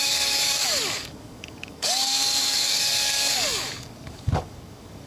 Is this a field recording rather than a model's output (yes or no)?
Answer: no